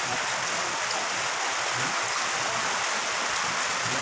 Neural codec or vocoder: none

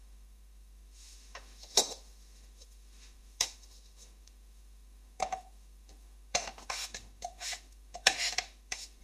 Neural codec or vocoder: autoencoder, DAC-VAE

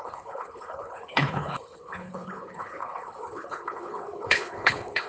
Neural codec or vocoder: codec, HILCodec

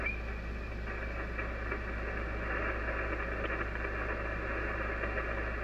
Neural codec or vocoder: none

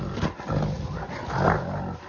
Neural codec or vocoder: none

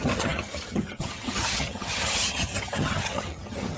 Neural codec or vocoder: vocoder, HiFi-GAN